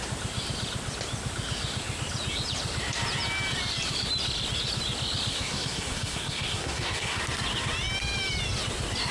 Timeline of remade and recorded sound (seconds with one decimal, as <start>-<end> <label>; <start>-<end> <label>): 0.0-5.3 recorded; 5.3-7.2 remade; 7.2-9.1 recorded